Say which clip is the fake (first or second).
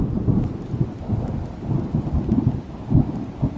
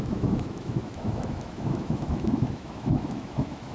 second